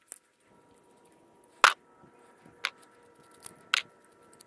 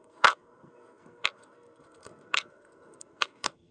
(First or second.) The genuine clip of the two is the first